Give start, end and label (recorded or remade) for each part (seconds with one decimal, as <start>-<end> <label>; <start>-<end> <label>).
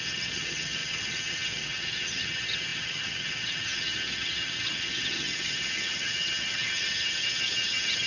0.0-8.1 remade